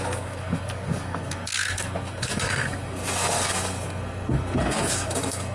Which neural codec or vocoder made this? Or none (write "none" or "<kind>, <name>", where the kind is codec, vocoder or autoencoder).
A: codec, SNAC